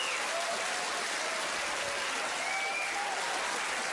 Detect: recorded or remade recorded